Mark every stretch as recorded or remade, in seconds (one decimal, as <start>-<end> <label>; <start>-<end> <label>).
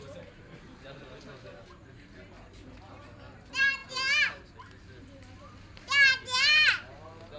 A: 0.0-7.4 recorded